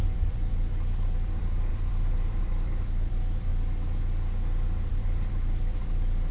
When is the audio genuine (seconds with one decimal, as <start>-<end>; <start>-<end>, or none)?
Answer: 3.5-4.9